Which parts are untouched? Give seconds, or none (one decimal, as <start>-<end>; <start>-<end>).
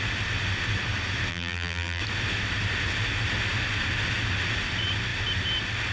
0.0-1.3; 2.0-5.9